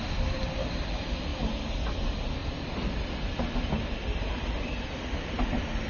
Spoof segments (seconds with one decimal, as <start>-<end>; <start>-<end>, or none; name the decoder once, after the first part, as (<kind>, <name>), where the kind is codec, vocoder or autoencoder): 2.4-5.9 (vocoder, BigVGAN v2)